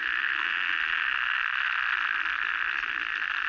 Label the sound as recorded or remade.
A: recorded